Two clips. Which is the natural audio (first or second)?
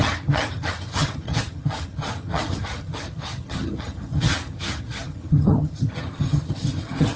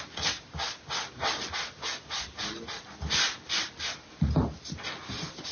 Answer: second